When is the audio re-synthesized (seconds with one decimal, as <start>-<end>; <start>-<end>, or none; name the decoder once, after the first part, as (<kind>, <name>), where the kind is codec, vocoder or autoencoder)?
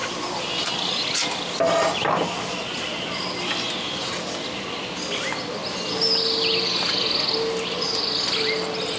none